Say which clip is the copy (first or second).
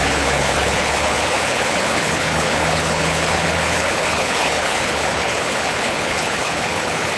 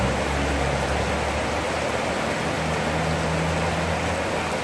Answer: first